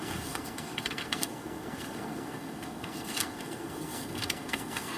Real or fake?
fake